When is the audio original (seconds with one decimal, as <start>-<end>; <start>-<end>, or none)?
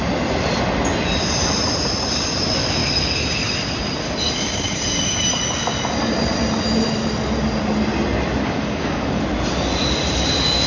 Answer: 0.0-8.4; 9.2-10.7